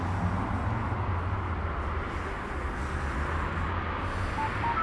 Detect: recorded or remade recorded